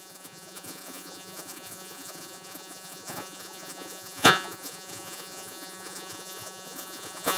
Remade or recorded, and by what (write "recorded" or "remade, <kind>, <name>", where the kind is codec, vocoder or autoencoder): remade, vocoder, Vocos